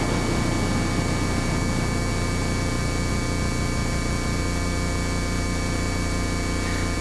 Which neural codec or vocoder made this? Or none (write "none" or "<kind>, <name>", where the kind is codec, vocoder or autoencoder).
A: none